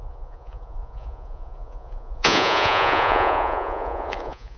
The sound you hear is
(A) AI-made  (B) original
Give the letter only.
A